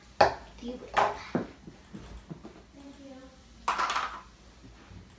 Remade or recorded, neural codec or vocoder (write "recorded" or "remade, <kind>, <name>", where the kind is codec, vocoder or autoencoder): recorded